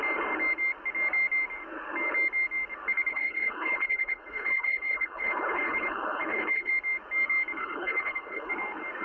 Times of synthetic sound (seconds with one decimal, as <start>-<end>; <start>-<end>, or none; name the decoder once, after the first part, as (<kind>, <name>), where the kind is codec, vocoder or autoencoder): 3.1-6.7 (codec, HILCodec); 7.6-8.5